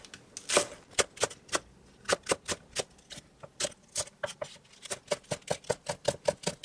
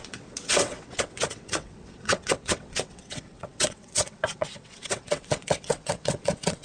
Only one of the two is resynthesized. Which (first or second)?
second